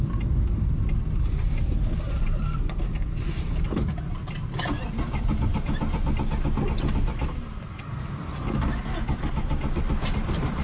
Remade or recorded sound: recorded